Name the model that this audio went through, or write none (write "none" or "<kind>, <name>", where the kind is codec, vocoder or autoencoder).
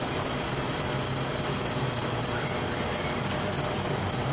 none